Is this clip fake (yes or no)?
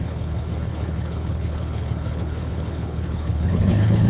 yes